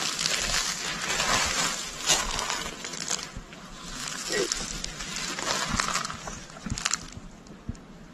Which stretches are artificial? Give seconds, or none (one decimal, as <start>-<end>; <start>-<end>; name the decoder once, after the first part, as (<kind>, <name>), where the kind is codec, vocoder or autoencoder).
none